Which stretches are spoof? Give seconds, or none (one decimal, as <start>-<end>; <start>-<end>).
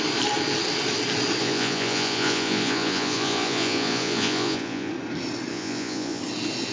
1.4-4.9; 5.5-6.2